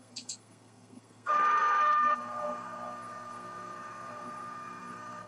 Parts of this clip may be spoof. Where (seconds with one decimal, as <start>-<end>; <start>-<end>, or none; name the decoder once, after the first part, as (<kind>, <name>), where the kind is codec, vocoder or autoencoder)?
0.0-5.3 (codec, SNAC)